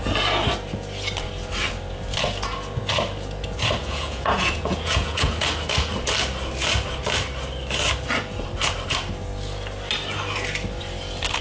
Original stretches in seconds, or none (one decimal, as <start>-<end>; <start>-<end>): 0.0-3.8; 5.3-11.4